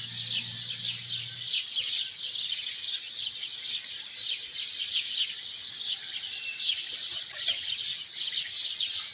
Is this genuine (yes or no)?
yes